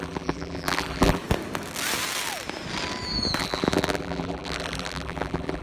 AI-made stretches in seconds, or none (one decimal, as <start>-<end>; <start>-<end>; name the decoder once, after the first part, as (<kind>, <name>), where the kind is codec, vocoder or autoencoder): 0.0-1.2 (vocoder, BigVGAN v2); 3.4-5.6